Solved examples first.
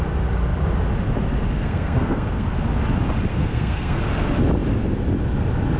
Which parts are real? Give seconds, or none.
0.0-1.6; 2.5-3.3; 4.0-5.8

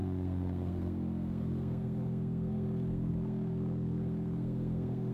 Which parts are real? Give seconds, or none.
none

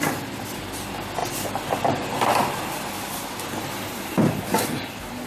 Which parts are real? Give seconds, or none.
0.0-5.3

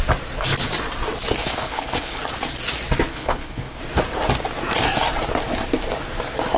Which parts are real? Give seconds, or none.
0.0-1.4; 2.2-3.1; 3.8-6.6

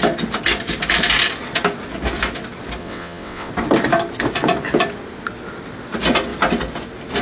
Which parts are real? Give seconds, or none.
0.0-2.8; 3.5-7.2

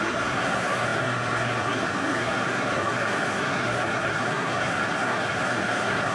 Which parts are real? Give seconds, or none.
none

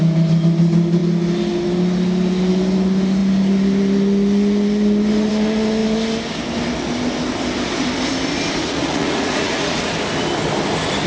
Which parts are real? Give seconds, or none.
0.0-8.6; 9.9-11.1

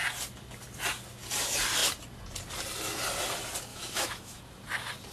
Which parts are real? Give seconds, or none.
0.0-3.7; 4.4-5.1